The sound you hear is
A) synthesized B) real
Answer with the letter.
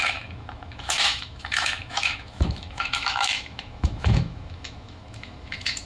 A